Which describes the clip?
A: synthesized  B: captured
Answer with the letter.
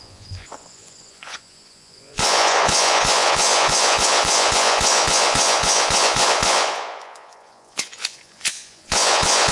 A